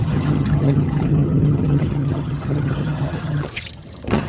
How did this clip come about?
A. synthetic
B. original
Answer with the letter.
A